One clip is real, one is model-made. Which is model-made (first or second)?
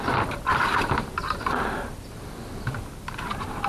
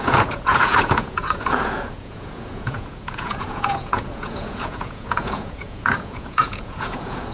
second